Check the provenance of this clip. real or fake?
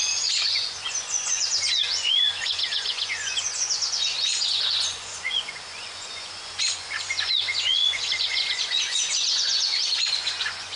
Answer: fake